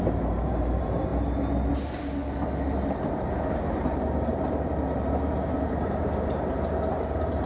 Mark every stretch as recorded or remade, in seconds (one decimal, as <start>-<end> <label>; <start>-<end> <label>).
0.0-1.1 remade; 1.1-1.7 recorded; 1.7-2.2 remade; 2.2-3.5 recorded; 3.5-7.5 remade